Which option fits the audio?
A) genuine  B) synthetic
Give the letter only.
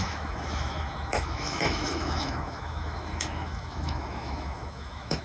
B